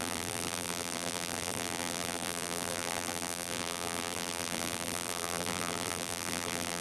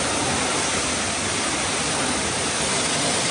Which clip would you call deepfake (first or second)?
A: first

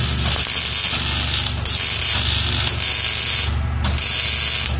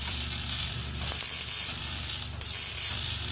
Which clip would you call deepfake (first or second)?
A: second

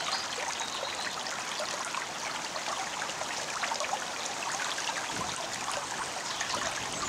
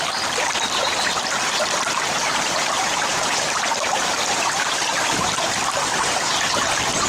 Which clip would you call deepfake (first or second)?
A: second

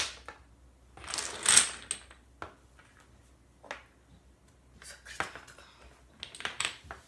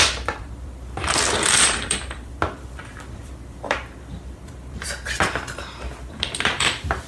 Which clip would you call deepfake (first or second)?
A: second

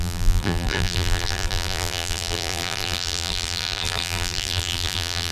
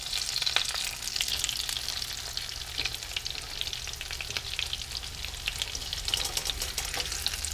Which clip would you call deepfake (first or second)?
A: first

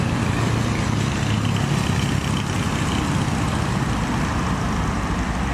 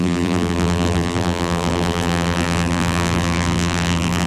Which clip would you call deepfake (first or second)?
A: second